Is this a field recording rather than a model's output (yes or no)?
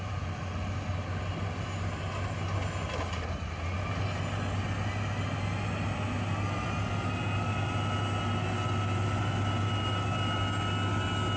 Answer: yes